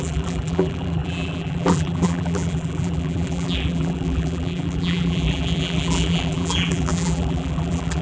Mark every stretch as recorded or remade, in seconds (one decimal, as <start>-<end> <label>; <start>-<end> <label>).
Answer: 0.0-8.0 remade